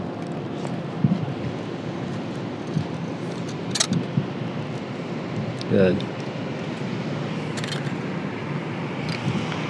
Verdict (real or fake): real